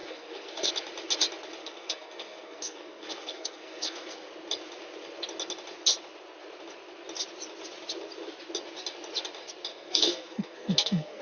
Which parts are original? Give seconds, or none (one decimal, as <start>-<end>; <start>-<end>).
0.7-1.6; 4.3-9.7